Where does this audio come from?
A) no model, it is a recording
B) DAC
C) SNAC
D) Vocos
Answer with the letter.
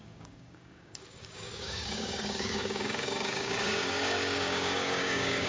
B